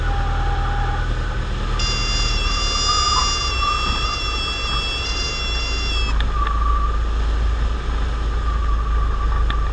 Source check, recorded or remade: recorded